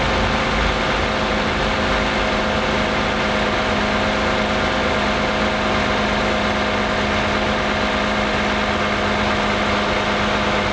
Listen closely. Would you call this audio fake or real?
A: real